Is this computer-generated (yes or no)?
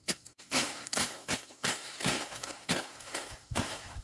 yes